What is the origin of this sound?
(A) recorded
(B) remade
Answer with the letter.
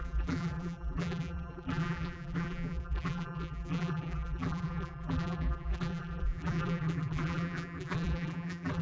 B